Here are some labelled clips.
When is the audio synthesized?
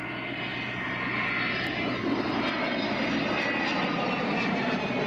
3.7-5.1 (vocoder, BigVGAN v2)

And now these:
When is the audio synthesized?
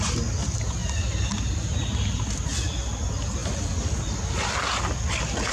none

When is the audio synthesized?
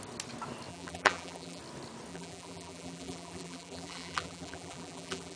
0.7-1.6 (vocoder, BigVGAN v2); 2.1-5.4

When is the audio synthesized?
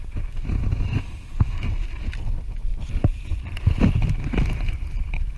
2.7-3.3 (vocoder, BigVGAN v2)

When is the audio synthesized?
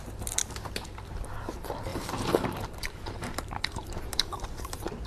1.9-5.1 (vocoder, BigVGAN v2)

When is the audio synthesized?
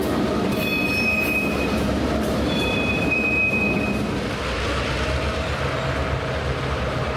0.0-3.4 (vocoder, BigVGAN v2); 6.6-7.2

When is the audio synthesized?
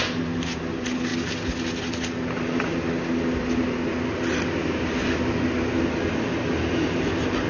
none